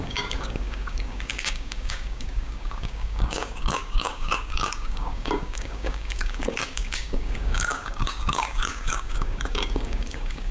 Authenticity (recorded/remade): remade